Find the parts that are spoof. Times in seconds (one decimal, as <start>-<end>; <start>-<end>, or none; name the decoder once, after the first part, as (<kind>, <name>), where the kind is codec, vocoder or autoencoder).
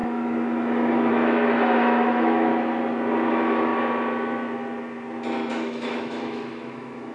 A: 0.0-2.5 (autoencoder, DAC-VAE); 3.3-3.7; 5.5-7.1